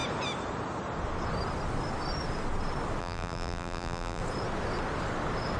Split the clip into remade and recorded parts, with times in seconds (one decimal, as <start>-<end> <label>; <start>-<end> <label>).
0.0-3.0 recorded; 3.0-4.2 remade; 4.2-5.6 recorded